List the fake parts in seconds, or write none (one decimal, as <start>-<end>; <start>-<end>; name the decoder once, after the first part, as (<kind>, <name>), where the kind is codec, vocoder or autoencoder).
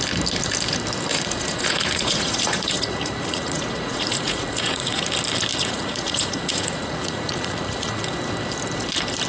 1.1-5.1 (vocoder, Vocos); 5.6-8.0